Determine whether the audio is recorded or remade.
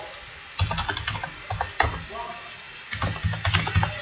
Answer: recorded